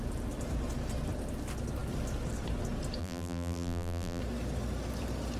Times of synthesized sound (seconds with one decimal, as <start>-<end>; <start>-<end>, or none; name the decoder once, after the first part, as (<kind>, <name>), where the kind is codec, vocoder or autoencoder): 3.0-4.2 (vocoder, BigVGAN v2)